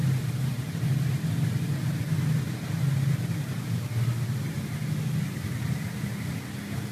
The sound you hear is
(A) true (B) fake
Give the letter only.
A